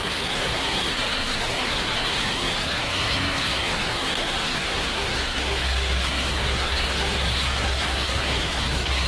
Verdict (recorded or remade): remade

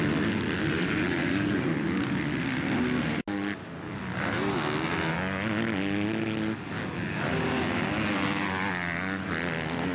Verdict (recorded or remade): recorded